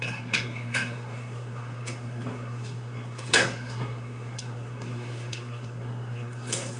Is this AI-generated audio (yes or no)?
yes